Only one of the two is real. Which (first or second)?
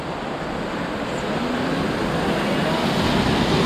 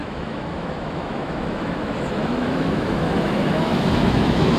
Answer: first